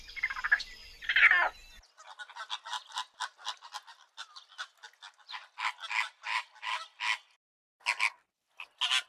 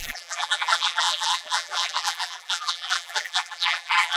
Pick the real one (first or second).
first